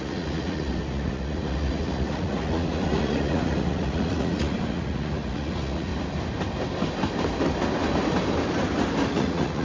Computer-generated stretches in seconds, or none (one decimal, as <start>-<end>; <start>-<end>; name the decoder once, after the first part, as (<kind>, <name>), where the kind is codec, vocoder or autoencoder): 0.0-5.9 (vocoder, Vocos); 9.1-9.6